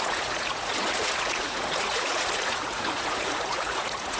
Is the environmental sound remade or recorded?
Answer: remade